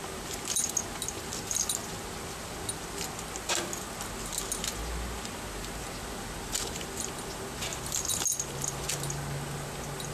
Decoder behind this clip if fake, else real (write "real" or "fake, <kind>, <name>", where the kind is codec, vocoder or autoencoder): real